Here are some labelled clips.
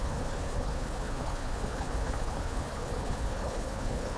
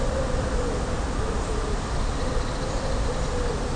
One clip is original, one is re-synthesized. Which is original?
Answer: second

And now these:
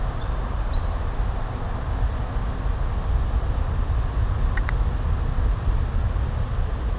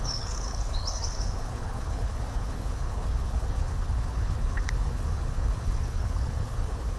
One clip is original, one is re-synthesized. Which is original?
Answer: first